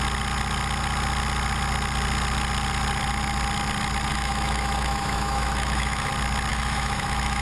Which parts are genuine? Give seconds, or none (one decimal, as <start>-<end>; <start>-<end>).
0.0-4.1; 6.1-6.5